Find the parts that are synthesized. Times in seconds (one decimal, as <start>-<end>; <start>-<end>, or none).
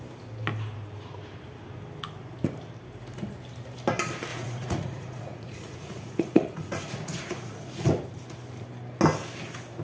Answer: 4.3-7.9